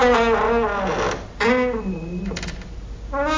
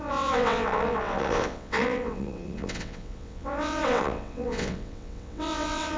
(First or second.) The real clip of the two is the first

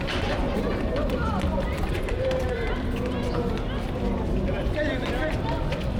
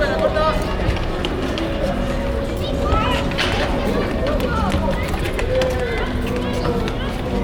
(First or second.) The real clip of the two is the second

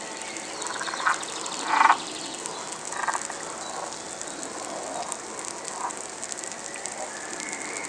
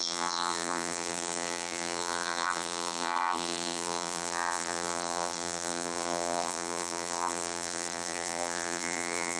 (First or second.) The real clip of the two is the first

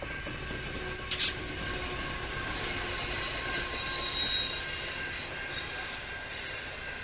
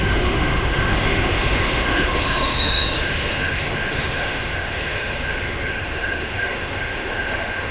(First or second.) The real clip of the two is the first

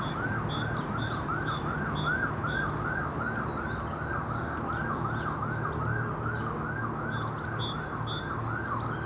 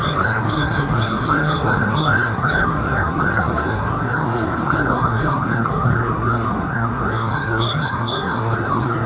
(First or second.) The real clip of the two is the first